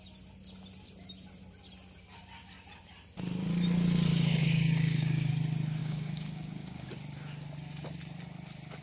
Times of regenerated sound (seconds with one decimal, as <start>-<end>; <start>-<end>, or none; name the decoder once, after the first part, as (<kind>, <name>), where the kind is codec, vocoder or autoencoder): 4.1-5.3 (codec, DAC); 5.8-6.9